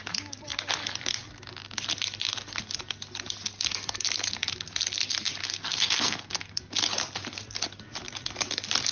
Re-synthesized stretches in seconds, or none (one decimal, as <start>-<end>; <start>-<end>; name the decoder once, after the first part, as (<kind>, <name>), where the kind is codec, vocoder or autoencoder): 5.4-6.6 (codec, SNAC)